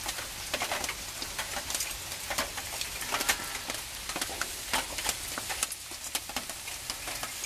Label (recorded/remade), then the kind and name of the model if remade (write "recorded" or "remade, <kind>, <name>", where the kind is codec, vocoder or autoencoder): recorded